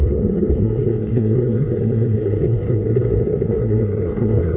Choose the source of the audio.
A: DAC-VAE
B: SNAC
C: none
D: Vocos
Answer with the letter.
B